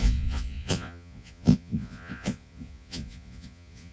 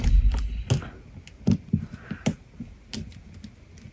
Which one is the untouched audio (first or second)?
second